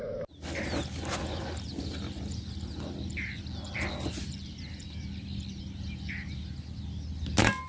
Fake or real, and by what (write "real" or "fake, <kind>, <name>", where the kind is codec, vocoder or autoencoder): real